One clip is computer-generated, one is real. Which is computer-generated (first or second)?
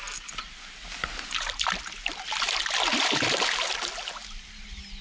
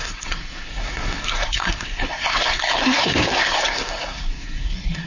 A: second